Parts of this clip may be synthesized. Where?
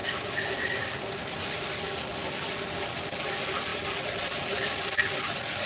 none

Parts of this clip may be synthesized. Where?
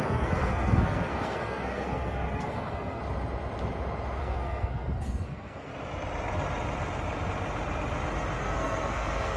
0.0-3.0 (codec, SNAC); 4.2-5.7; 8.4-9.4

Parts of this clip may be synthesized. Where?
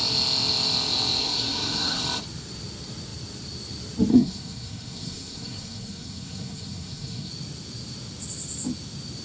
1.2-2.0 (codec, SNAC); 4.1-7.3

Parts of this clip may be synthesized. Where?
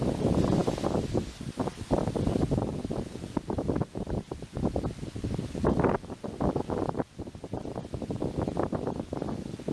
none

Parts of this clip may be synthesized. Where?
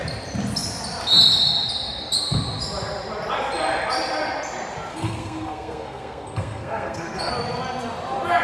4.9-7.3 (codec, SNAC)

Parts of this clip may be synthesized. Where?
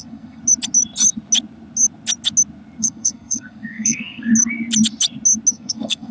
0.0-0.4 (codec, SNAC); 2.8-4.3; 5.5-6.1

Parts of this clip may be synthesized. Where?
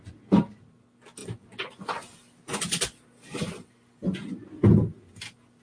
none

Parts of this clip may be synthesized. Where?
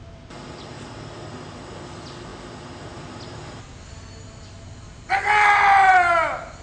none